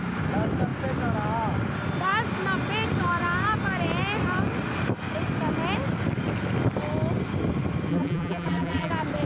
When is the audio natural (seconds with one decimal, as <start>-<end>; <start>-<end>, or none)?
0.0-7.9; 8.9-9.3